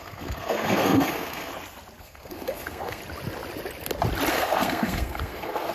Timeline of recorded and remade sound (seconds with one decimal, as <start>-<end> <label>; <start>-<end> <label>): 0.0-1.5 remade; 1.5-2.0 recorded; 2.0-3.0 remade; 3.0-4.3 recorded; 4.3-5.7 remade